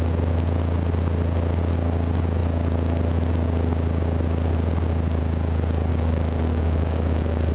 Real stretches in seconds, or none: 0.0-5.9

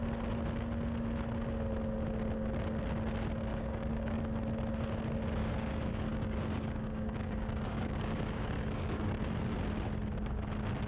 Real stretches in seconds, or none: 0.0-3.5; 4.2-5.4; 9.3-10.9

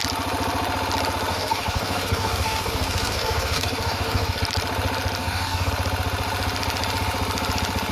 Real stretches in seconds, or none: 0.0-1.3; 4.4-5.2; 5.7-7.9